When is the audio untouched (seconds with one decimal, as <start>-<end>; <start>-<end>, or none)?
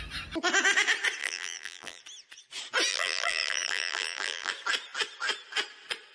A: 0.0-1.2; 2.0-2.9; 4.5-6.1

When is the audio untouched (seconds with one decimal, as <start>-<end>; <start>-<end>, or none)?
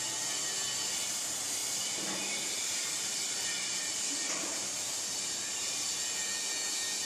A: 0.0-1.6; 5.9-7.1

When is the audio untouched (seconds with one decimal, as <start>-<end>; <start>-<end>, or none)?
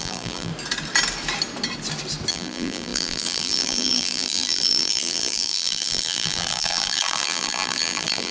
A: 0.5-2.3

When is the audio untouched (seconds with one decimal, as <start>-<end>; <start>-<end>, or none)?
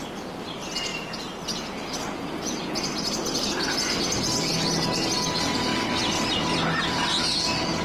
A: 0.0-7.8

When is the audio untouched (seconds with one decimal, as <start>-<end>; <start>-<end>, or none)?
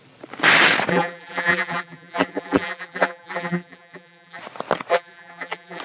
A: 0.0-0.9; 4.4-4.9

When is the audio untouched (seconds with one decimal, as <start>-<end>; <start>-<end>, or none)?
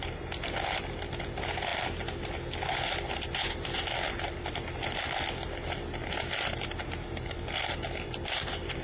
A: 0.0-8.8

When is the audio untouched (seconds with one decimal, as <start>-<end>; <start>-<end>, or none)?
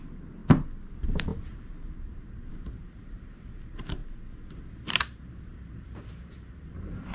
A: 0.4-0.9; 4.0-4.5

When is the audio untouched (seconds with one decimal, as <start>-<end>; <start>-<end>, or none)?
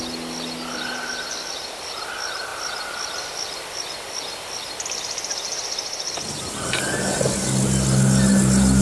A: 0.0-2.5; 7.2-8.8